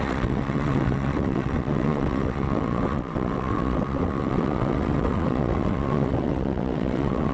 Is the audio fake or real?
fake